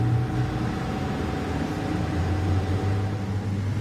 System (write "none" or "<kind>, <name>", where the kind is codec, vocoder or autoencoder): none